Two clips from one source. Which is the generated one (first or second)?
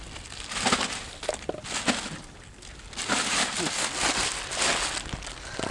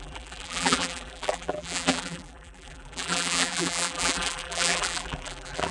second